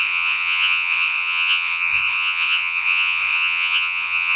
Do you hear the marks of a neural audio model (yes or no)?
yes